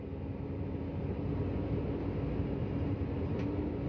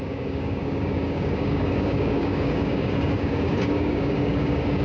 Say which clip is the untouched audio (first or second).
first